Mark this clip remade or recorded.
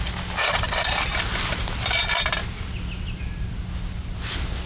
recorded